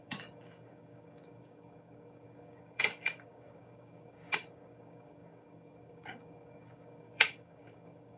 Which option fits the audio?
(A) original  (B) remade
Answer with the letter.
B